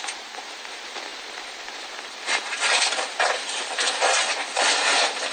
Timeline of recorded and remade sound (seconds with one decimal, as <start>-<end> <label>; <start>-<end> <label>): 0.0-5.3 remade